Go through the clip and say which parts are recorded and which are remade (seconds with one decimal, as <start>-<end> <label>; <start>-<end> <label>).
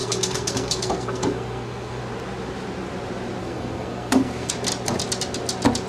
0.0-2.0 remade; 2.0-3.4 recorded; 3.4-4.5 remade; 4.5-5.9 recorded